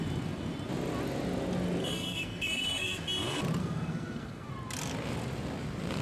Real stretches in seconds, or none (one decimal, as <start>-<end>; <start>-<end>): 0.0-1.8; 3.0-3.6; 4.5-6.0